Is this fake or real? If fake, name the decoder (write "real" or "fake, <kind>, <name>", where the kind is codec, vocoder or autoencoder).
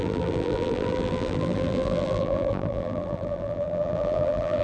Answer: fake, vocoder, BigVGAN v2